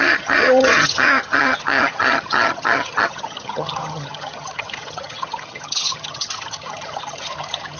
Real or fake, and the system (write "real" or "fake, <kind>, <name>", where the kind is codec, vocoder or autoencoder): fake, vocoder, HiFi-GAN